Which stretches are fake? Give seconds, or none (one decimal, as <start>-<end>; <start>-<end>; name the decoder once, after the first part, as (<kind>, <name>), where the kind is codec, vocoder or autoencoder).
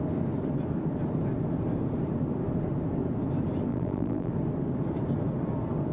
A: 3.7-4.3 (vocoder, BigVGAN v2)